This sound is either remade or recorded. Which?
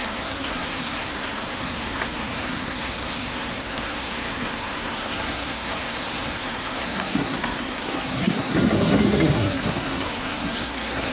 remade